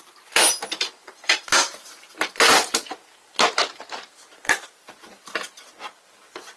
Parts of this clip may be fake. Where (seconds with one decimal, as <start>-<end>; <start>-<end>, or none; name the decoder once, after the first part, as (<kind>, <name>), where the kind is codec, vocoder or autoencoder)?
1.0-5.0 (vocoder, BigVGAN v2)